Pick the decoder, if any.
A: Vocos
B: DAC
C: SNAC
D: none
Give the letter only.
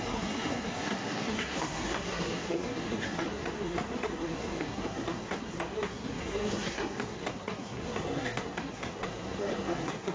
C